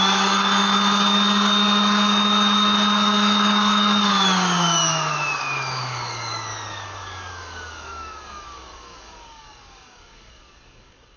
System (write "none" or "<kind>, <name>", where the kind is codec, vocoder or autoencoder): codec, DAC